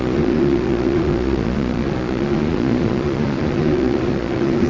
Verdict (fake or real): fake